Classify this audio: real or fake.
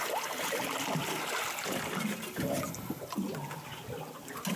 real